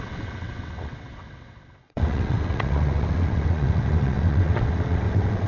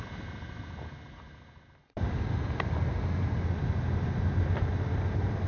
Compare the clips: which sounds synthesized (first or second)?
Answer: first